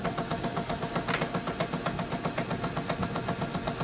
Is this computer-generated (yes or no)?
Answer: no